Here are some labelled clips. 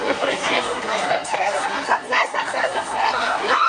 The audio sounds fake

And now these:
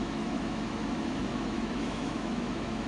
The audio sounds fake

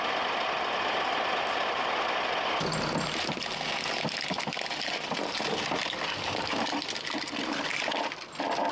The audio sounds real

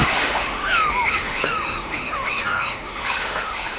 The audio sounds fake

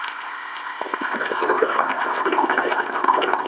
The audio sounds fake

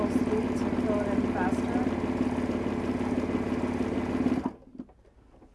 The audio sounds real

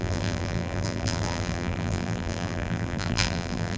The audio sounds fake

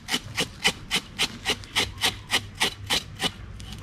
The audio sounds real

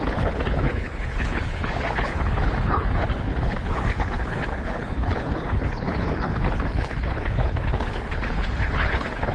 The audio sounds fake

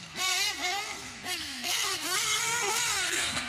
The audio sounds fake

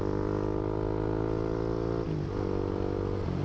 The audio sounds real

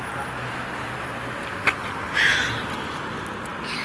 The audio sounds real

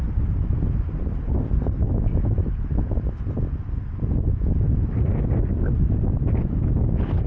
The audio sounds real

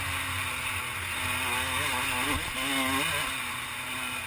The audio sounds real